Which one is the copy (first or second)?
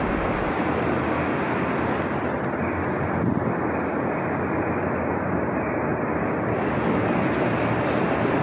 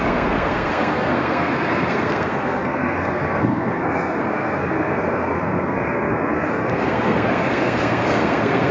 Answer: second